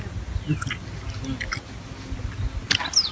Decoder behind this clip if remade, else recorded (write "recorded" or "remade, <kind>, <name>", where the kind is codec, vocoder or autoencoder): recorded